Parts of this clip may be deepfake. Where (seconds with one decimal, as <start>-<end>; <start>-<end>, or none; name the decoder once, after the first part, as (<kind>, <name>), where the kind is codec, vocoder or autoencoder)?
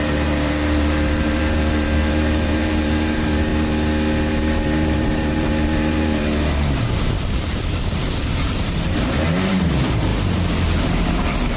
0.0-3.5 (vocoder, BigVGAN v2); 4.3-10.1; 10.8-11.6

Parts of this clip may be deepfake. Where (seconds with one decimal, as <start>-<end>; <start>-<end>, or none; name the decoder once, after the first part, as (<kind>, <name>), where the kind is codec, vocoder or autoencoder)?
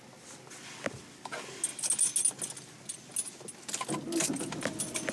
none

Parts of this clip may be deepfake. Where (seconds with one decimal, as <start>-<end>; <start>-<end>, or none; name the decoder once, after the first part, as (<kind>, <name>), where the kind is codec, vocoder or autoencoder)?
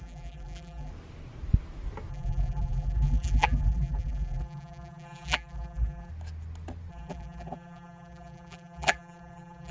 0.0-0.9 (vocoder, BigVGAN v2); 2.1-6.1; 6.9-9.7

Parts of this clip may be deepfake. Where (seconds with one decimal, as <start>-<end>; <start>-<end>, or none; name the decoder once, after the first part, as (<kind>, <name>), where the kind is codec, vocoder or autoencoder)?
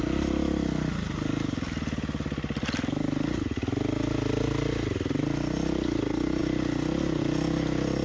none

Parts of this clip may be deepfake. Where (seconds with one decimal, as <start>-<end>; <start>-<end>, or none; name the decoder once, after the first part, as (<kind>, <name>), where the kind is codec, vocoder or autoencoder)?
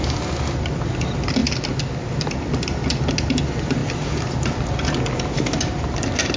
none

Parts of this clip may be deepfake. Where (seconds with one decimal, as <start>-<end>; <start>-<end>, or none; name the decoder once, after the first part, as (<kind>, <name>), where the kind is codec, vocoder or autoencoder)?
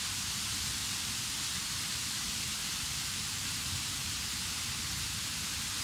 0.0-0.8 (vocoder, BigVGAN v2); 2.1-5.8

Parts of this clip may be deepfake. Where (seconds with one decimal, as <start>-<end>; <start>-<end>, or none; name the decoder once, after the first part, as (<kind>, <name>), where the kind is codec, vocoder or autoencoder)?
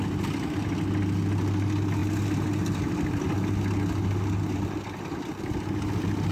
none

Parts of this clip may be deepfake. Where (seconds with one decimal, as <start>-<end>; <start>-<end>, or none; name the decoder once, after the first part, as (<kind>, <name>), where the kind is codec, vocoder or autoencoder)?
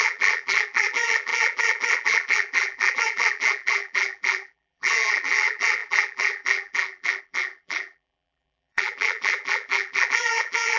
0.0-10.8 (vocoder, BigVGAN v2)